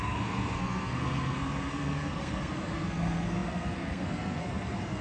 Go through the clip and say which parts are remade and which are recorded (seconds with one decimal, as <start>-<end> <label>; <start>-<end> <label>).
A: 0.0-5.0 remade